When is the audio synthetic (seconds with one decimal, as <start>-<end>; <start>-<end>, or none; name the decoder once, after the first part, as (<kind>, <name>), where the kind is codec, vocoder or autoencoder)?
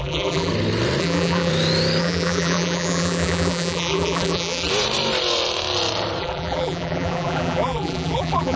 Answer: 0.0-0.5 (vocoder, BigVGAN v2); 1.0-1.5; 2.0-4.7; 6.2-8.6